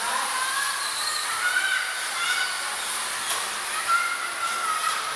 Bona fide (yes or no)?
no